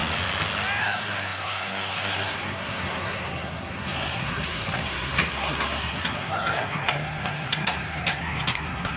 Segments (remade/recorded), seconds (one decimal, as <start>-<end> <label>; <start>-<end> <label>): 0.0-0.8 recorded; 0.8-9.0 remade